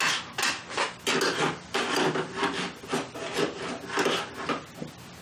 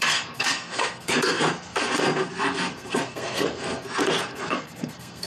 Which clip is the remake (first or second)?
second